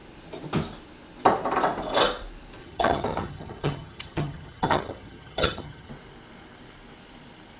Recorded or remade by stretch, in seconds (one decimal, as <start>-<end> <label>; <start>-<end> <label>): 0.0-2.6 recorded; 2.6-5.9 remade; 5.9-7.6 recorded